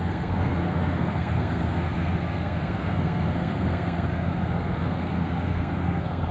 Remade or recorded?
remade